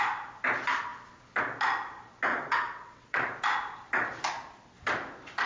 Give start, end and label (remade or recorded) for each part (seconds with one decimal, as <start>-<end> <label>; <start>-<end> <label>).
0.0-2.3 recorded; 2.3-3.3 remade; 3.3-5.5 recorded